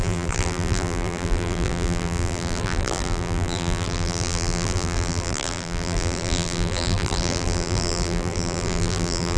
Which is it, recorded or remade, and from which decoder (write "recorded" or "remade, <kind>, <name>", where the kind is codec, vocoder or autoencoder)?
remade, vocoder, BigVGAN v2